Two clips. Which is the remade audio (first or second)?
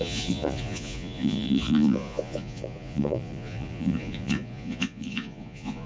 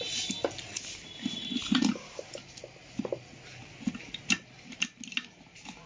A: first